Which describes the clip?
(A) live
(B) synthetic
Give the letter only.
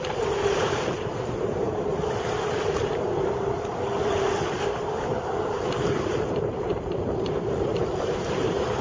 B